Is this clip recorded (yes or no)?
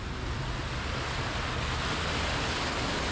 yes